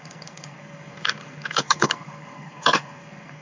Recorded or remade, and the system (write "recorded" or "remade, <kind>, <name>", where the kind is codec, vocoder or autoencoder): remade, codec, SNAC